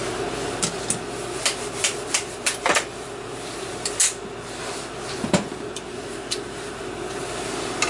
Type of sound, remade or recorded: recorded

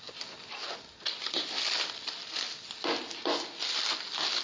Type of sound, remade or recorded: recorded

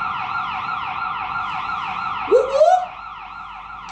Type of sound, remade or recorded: recorded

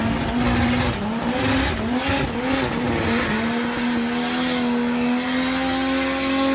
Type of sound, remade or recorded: recorded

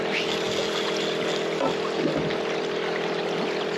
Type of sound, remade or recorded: recorded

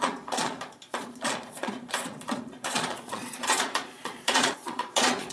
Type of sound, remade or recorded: remade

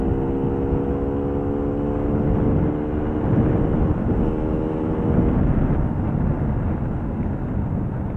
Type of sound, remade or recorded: recorded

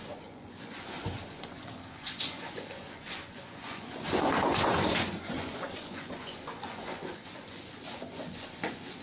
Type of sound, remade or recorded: remade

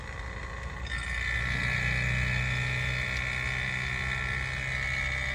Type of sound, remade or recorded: recorded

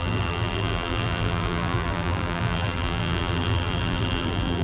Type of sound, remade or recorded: remade